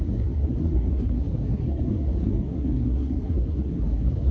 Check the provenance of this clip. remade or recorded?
remade